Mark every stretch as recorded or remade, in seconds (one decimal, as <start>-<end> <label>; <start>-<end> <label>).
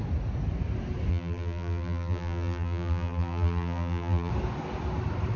0.0-1.1 recorded; 1.1-4.3 remade; 4.3-5.4 recorded